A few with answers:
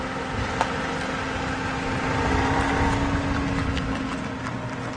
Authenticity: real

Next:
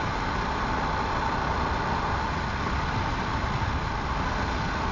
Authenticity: real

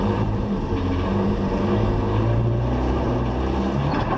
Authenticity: fake